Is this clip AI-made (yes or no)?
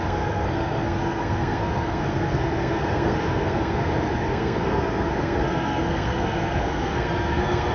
yes